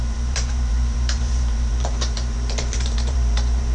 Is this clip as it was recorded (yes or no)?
no